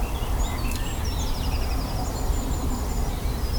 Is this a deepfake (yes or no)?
no